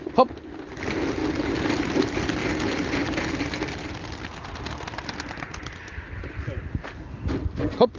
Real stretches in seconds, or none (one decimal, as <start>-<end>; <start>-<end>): 0.0-8.0